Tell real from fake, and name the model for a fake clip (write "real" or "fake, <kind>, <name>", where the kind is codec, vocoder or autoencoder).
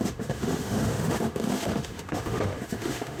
fake, autoencoder, DAC-VAE